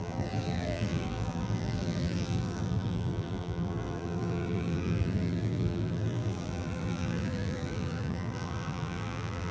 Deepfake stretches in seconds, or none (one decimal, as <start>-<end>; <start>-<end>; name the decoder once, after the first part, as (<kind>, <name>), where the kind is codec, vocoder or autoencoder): 0.0-9.5 (vocoder, BigVGAN v2)